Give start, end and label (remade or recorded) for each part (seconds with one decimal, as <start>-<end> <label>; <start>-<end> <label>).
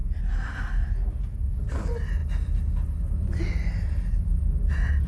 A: 0.0-0.7 remade; 0.7-5.1 recorded